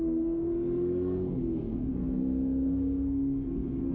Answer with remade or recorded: remade